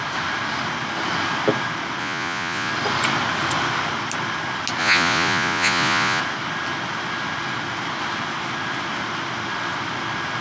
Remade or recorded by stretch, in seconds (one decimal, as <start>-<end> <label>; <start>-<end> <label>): 0.0-2.0 recorded; 2.0-2.7 remade; 2.7-4.8 recorded; 4.8-6.2 remade; 6.2-10.4 recorded